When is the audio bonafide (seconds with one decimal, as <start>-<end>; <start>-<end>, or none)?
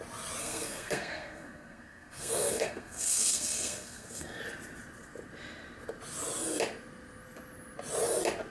0.0-0.4; 4.4-8.5